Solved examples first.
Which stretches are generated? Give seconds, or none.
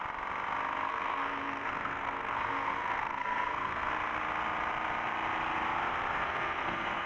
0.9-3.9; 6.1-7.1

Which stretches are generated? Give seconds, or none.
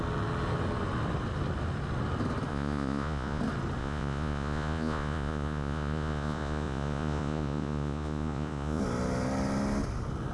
2.5-3.4; 3.8-8.8